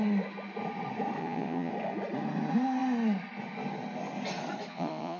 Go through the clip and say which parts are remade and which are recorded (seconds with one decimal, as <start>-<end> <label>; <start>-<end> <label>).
0.0-1.2 recorded; 1.2-1.7 remade; 1.7-4.7 recorded; 4.7-5.2 remade